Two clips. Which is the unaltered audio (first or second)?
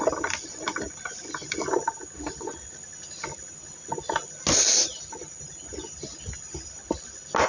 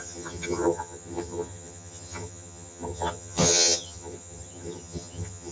first